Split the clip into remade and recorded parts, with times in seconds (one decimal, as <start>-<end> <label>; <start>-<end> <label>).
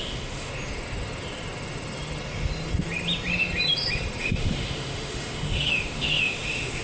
0.0-0.5 remade; 0.5-4.2 recorded; 4.2-6.8 remade